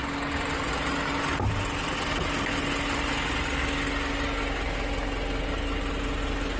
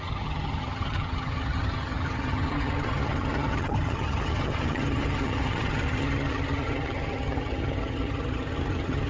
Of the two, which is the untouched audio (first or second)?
first